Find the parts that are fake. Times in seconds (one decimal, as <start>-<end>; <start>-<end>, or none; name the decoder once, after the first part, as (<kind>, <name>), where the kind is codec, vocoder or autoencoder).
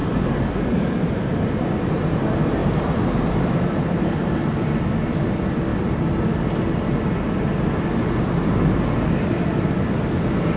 0.0-1.8 (vocoder, BigVGAN v2); 2.6-4.1